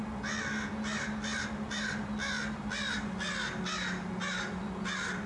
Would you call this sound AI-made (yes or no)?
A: no